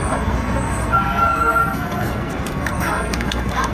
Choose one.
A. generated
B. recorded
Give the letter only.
A